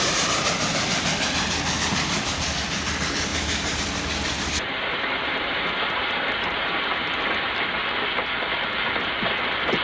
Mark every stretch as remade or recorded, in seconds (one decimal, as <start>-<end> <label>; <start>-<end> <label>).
0.0-3.3 recorded; 3.3-7.7 remade; 7.7-9.8 recorded